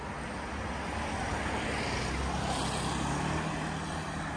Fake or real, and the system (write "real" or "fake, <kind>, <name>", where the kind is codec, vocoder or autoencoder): real